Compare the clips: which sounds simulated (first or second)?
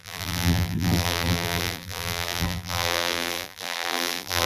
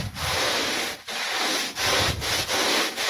first